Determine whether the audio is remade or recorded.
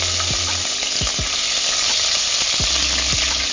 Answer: recorded